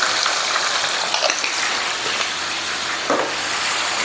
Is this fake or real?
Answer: real